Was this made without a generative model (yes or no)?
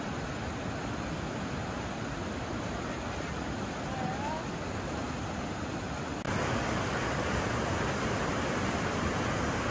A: yes